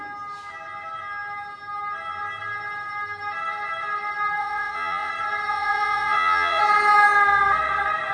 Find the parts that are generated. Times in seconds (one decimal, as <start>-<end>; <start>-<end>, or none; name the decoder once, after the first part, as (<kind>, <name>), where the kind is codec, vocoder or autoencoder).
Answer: 4.4-5.1 (vocoder, Vocos); 5.5-6.6